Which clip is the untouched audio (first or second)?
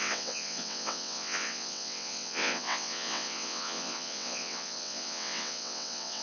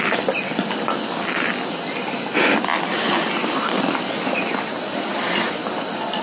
second